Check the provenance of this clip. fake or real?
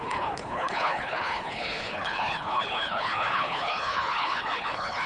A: fake